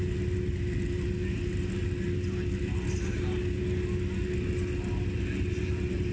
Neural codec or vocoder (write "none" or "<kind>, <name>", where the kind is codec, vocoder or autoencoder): none